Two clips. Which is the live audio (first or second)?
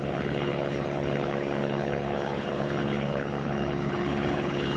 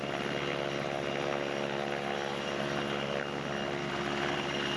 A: second